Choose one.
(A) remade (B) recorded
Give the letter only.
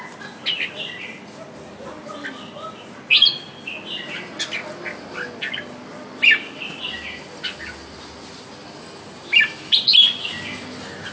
B